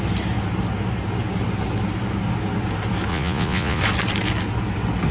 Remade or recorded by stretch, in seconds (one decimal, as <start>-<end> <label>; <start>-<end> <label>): 0.0-3.1 recorded; 3.1-3.8 remade; 3.8-5.1 recorded